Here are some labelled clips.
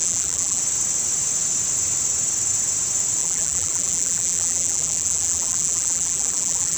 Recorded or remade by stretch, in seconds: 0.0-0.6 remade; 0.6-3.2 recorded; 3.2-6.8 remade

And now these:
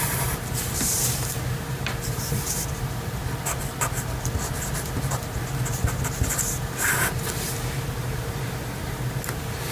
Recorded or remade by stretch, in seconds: 0.0-3.2 remade; 3.2-7.0 recorded; 7.0-9.7 remade

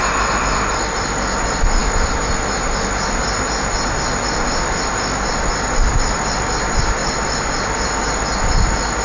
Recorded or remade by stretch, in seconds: 0.0-9.0 recorded

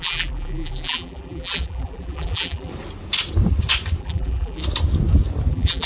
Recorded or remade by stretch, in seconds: 0.0-2.7 remade; 2.7-4.0 recorded; 4.0-4.6 remade; 4.6-5.5 recorded; 5.5-5.9 remade